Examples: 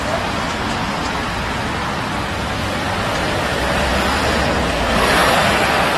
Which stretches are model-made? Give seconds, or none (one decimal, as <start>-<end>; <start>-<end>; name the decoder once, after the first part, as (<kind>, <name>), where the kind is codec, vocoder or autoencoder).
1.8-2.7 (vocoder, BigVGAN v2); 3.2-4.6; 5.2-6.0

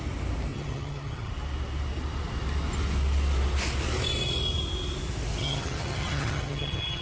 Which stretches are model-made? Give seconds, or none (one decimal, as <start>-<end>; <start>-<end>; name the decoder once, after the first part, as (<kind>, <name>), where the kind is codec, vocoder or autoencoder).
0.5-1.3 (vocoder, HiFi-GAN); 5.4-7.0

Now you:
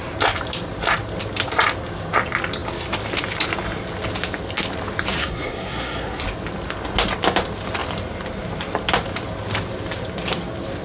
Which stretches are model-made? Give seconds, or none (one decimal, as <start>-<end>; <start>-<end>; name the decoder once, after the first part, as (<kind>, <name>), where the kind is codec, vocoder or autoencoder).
5.2-6.2 (codec, SNAC)

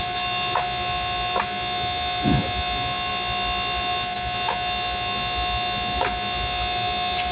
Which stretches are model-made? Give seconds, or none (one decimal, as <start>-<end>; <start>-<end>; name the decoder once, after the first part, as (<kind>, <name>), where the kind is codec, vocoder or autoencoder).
none

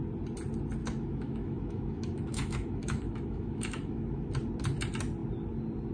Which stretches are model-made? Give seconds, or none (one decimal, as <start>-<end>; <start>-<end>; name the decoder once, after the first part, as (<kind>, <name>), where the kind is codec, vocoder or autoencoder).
0.8-4.3 (autoencoder, DAC-VAE)

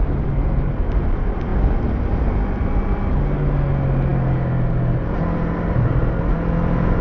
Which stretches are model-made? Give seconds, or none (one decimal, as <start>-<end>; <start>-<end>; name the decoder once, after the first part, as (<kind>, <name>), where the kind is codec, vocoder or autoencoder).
none